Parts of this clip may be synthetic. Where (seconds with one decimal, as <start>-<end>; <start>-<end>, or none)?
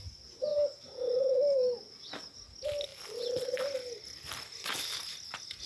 0.5-2.2; 2.9-3.6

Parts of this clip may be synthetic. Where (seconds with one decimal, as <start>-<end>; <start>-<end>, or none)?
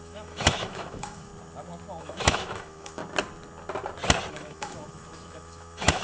0.0-1.3; 2.0-3.0; 4.3-6.0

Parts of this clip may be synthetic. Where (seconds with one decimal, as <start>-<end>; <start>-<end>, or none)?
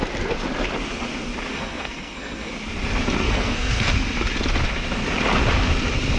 1.5-2.5; 3.2-3.9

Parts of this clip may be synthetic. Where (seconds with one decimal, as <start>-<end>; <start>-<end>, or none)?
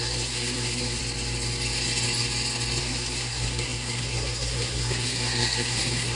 0.0-1.0; 2.8-6.1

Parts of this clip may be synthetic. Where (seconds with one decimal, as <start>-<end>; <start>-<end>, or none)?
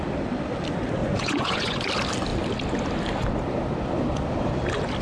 1.0-1.9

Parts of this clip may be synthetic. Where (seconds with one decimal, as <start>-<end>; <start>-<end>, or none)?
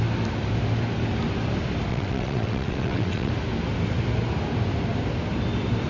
1.9-3.3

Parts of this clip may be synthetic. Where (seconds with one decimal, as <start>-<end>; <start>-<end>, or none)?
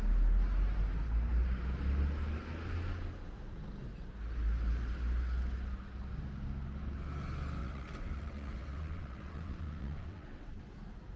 7.6-10.6